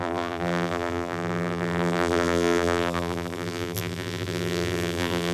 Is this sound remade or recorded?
remade